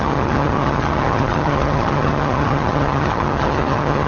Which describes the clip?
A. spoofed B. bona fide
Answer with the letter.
A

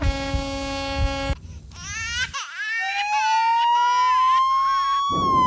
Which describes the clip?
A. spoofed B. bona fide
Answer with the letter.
B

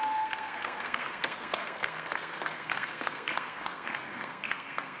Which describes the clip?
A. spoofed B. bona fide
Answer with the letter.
A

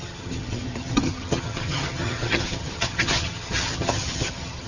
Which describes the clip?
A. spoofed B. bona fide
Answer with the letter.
A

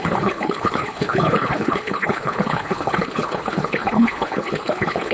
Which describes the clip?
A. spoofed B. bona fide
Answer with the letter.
A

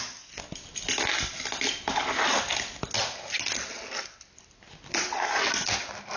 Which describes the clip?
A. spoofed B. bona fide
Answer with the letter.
B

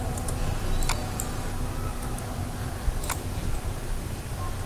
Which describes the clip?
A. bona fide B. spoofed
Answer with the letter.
A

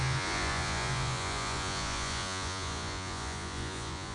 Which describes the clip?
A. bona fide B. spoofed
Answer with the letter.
B